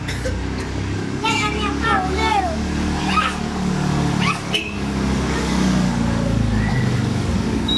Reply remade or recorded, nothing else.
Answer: remade